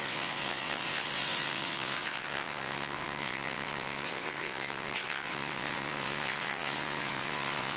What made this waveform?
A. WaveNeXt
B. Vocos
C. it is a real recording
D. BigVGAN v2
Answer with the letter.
A